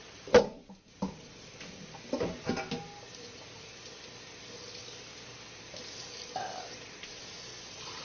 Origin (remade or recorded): recorded